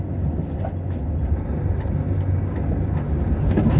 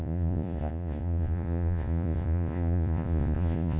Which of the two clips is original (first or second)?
first